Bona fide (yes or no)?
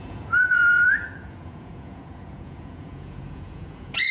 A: no